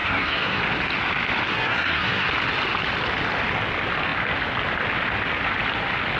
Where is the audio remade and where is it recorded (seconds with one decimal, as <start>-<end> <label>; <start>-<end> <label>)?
0.0-0.6 remade; 0.6-1.5 recorded; 1.5-2.3 remade; 2.3-6.2 recorded